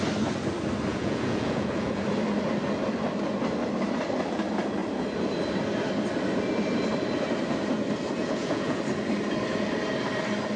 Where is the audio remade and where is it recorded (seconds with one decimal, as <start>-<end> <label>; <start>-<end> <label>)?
0.0-0.9 recorded; 0.9-2.0 remade; 2.0-8.2 recorded; 8.2-8.8 remade; 8.8-10.6 recorded